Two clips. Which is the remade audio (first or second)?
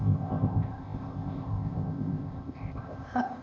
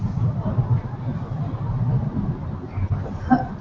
first